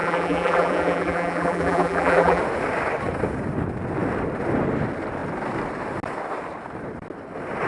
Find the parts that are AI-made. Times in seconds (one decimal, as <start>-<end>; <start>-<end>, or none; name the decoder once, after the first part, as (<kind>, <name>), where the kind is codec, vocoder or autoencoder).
0.0-2.4 (vocoder, BigVGAN v2)